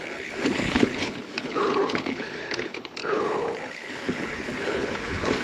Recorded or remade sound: remade